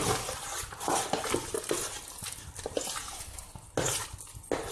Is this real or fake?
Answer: real